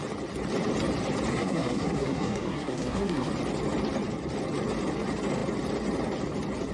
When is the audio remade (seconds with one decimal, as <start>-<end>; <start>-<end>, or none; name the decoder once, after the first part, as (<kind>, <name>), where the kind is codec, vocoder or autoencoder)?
1.3-3.3 (codec, SNAC)